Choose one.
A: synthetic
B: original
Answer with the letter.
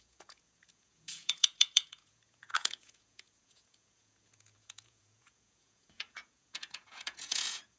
A